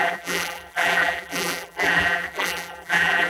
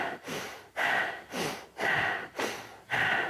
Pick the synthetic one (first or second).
first